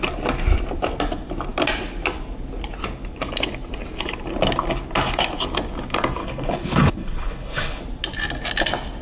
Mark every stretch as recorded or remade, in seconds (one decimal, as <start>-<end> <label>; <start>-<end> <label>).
0.0-6.2 recorded; 6.2-7.8 remade; 7.8-9.0 recorded